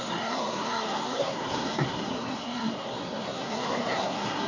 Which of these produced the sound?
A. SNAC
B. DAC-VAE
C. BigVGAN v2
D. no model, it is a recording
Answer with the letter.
A